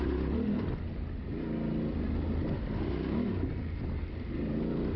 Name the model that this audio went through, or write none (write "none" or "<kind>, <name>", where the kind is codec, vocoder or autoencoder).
none